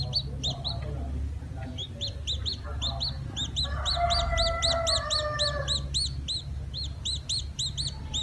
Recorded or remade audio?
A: recorded